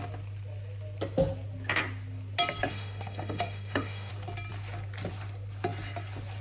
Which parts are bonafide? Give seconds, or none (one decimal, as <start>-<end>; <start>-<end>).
0.0-2.7; 4.1-6.4